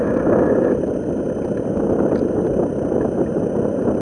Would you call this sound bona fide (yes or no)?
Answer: yes